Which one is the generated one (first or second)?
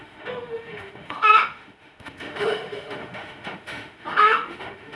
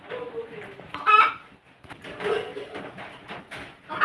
first